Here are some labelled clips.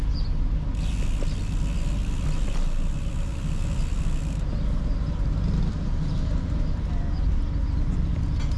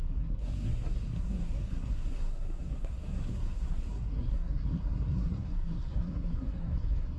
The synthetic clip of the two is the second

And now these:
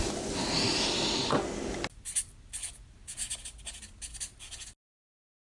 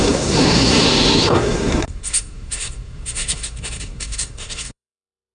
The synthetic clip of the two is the second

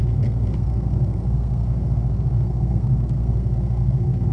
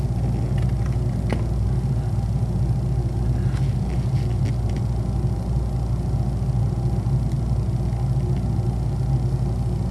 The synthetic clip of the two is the first